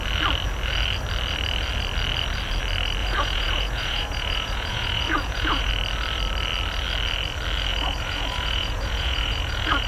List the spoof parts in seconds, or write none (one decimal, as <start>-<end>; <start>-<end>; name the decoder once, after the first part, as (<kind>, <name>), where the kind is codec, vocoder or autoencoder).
3.0-5.7 (vocoder, Vocos); 7.7-9.9